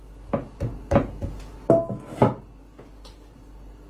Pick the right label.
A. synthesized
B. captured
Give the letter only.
B